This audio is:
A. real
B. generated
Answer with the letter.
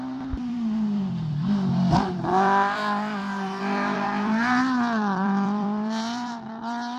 B